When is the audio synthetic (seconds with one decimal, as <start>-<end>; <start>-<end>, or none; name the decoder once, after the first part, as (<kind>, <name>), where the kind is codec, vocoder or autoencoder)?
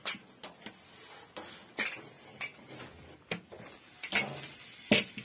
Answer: none